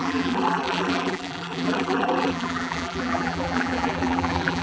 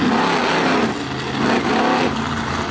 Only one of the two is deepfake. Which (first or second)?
first